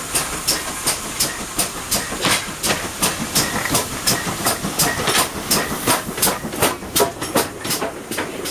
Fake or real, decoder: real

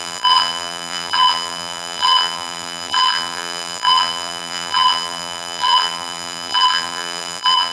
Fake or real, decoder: fake, vocoder, BigVGAN v2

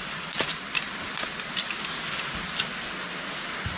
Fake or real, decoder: real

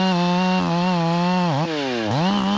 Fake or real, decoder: real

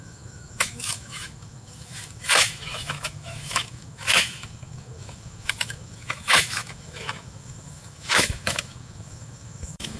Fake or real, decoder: fake, autoencoder, DAC-VAE